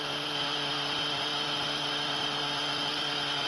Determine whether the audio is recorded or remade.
recorded